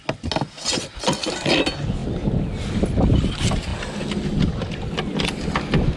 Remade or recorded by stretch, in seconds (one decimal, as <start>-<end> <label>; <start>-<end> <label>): 0.0-6.0 recorded